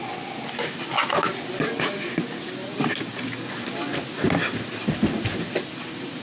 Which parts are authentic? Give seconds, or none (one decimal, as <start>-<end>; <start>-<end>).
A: 0.0-6.2